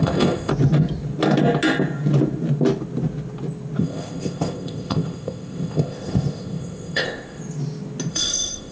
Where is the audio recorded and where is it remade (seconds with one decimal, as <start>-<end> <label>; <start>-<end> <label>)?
0.0-0.5 remade; 0.5-3.8 recorded; 3.8-7.4 remade; 7.4-8.1 recorded; 8.1-8.7 remade